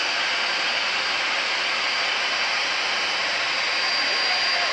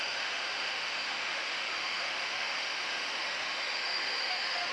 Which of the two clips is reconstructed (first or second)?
second